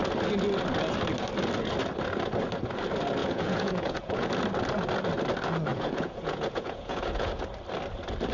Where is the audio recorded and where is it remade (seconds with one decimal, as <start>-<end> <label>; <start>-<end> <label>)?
0.0-3.2 recorded; 3.2-4.3 remade; 4.3-5.7 recorded; 5.7-7.4 remade; 7.4-8.3 recorded